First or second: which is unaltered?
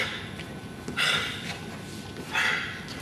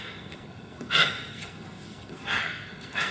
first